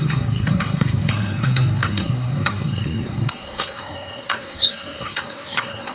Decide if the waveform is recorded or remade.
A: remade